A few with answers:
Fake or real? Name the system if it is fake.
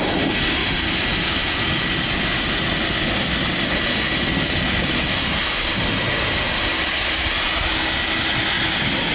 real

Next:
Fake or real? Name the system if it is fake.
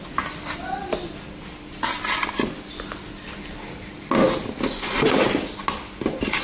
real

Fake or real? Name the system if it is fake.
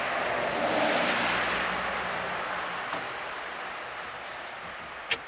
real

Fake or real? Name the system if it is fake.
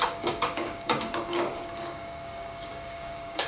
fake, codec, DAC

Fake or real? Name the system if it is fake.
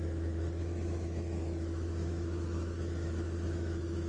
fake, autoencoder, DAC-VAE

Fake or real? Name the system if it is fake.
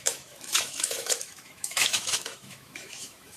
fake, autoencoder, DAC-VAE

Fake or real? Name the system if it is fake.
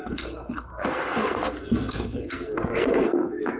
fake, codec, SNAC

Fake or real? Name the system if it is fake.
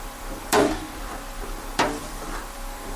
fake, vocoder, BigVGAN v2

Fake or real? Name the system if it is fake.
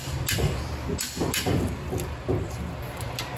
real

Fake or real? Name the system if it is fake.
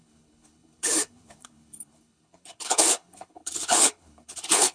fake, codec, HILCodec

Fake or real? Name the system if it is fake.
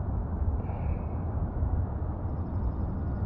real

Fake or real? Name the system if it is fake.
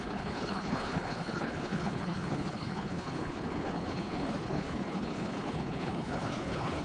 fake, codec, HILCodec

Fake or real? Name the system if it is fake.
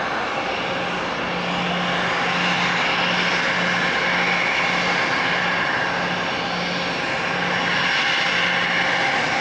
real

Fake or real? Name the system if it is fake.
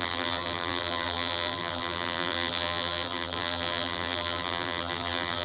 fake, vocoder, BigVGAN v2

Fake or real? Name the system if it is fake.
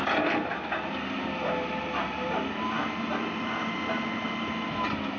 real